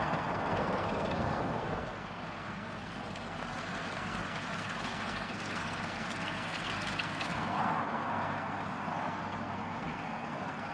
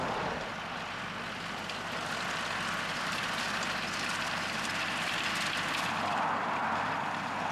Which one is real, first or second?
second